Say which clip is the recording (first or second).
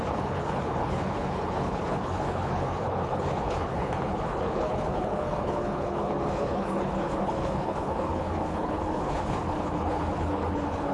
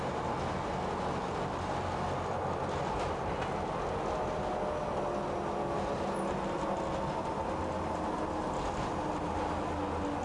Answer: second